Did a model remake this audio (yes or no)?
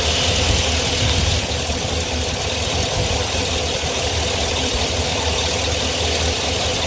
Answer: no